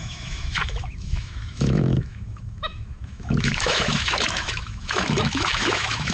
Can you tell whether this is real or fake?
fake